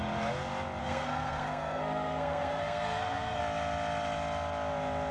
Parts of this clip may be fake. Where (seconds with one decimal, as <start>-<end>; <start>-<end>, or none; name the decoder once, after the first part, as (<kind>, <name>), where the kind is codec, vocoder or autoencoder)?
0.8-3.4 (codec, SNAC)